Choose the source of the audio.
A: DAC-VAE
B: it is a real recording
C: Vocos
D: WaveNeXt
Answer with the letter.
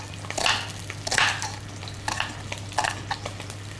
B